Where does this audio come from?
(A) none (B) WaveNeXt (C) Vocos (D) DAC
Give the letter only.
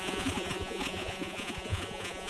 C